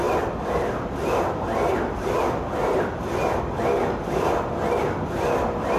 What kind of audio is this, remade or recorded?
recorded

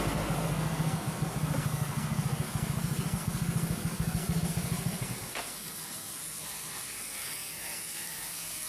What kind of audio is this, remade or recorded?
remade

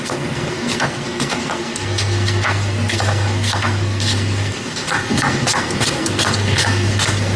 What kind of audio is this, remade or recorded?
remade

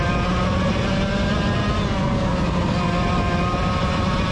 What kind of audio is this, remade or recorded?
recorded